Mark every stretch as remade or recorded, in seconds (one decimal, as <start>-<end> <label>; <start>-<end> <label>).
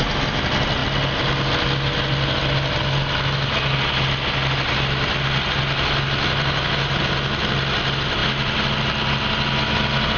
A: 0.0-10.2 recorded